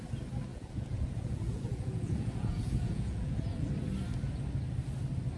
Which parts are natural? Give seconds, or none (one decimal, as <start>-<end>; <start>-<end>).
0.0-0.5; 3.7-5.4